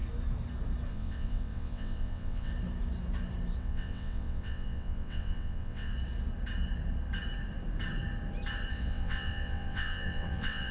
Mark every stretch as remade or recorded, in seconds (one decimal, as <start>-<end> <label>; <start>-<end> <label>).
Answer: 0.0-0.9 recorded; 0.9-2.5 remade; 2.5-3.6 recorded; 3.6-5.9 remade; 5.9-8.7 recorded; 8.7-10.7 remade